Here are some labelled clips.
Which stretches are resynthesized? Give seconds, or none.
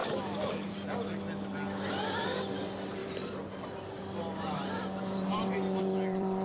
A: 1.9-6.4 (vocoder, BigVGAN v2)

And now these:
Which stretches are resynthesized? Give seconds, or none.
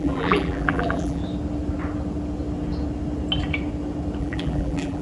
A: 0.0-1.2 (vocoder, BigVGAN v2); 4.2-5.0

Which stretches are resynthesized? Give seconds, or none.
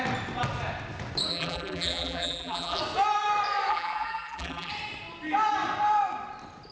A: 1.3-2.8 (vocoder, BigVGAN v2); 3.7-4.7